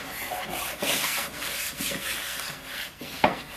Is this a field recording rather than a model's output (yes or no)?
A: no